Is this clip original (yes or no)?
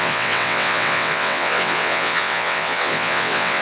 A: no